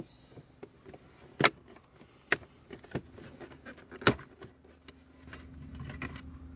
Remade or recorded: recorded